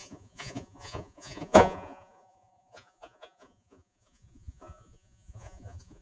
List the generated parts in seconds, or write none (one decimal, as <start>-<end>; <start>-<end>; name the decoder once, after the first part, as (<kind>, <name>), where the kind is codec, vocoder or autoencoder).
0.0-6.0 (vocoder, Vocos)